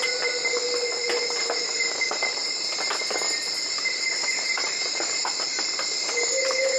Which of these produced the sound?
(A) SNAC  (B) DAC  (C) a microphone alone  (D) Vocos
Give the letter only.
C